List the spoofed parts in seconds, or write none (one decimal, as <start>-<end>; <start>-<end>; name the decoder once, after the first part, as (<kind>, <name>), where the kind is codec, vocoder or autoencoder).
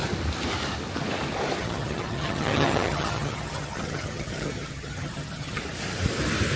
1.6-5.6 (vocoder, HiFi-GAN)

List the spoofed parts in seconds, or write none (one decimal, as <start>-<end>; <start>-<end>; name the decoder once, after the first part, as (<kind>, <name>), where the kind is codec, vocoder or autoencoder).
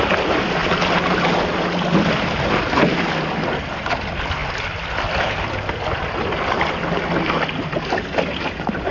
none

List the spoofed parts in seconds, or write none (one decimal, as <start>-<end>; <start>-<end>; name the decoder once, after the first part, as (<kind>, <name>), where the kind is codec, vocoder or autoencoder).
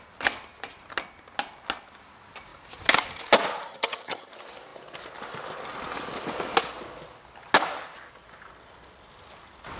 3.7-4.3 (vocoder, HiFi-GAN)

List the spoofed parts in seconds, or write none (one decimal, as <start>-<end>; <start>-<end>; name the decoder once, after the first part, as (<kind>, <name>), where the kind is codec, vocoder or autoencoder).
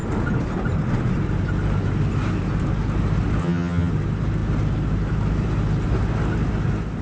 3.4-3.9 (vocoder, HiFi-GAN)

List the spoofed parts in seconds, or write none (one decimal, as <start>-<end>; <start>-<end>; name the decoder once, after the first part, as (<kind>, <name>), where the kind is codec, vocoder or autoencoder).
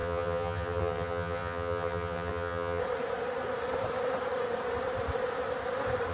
0.0-2.8 (vocoder, HiFi-GAN)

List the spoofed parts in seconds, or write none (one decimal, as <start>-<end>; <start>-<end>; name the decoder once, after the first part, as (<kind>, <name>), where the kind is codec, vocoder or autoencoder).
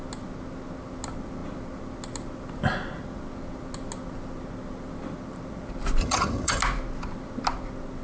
6.0-6.6 (vocoder, HiFi-GAN)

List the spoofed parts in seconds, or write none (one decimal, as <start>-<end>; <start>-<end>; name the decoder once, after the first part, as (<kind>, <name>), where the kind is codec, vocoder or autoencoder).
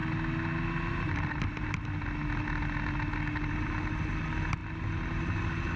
none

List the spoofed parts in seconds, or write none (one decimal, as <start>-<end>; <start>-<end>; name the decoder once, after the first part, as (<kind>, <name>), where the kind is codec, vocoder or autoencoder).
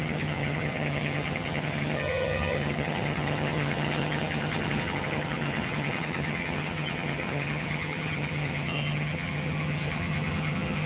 0.0-10.9 (vocoder, HiFi-GAN)